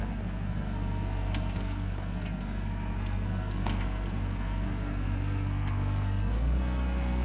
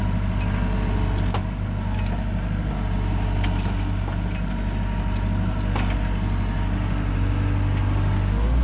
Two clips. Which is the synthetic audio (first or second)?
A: first